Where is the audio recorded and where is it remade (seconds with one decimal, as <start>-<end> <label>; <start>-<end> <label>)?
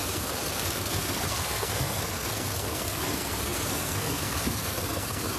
0.0-5.4 remade